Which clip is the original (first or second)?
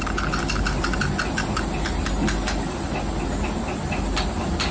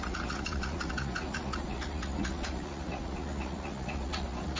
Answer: first